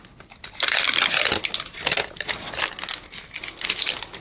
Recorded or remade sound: recorded